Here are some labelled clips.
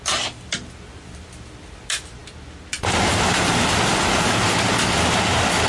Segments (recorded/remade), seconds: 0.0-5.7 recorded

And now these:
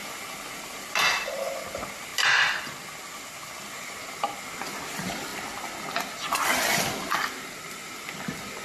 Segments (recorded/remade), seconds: 0.0-8.6 recorded

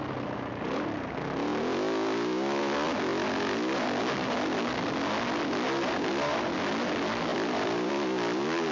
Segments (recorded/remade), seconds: 0.0-7.3 recorded; 7.3-7.9 remade; 7.9-8.7 recorded

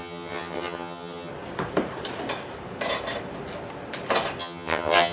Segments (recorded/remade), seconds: 0.0-1.3 remade; 1.3-4.4 recorded; 4.4-5.1 remade

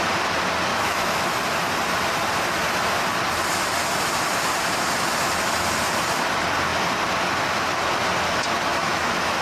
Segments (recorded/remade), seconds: 0.0-0.7 recorded; 0.7-1.3 remade; 1.3-8.7 recorded; 8.7-9.4 remade

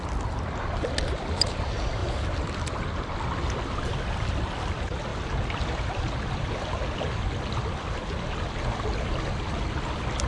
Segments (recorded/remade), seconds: 0.0-10.3 recorded

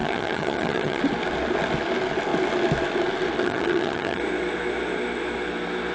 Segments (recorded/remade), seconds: 0.0-1.0 remade; 1.0-3.4 recorded; 3.4-4.2 remade; 4.2-5.9 recorded

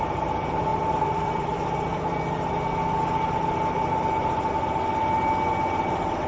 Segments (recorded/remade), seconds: 0.0-6.3 recorded